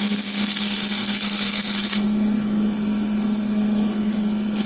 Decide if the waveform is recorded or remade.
remade